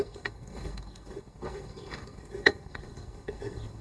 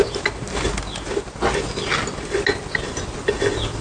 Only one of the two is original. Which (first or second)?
second